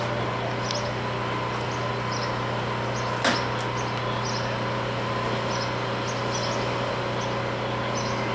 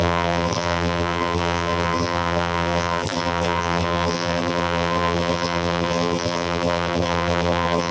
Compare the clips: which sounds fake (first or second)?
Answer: second